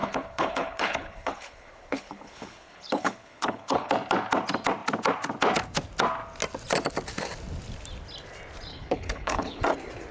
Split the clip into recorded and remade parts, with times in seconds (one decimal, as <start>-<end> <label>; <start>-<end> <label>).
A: 0.0-3.9 remade; 3.9-8.7 recorded; 8.7-9.6 remade; 9.6-10.1 recorded